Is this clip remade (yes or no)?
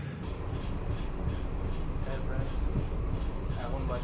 no